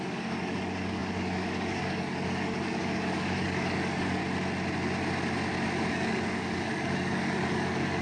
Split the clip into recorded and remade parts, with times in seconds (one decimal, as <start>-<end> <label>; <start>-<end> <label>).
0.0-4.2 remade; 4.2-5.9 recorded; 5.9-8.0 remade